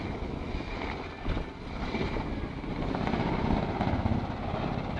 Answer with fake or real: real